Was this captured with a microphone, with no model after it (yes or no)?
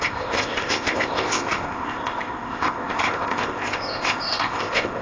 no